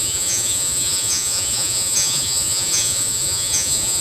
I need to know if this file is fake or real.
fake